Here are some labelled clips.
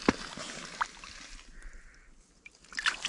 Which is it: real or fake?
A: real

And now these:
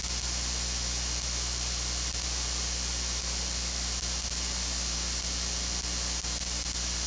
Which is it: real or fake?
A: real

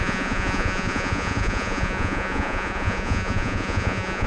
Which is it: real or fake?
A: fake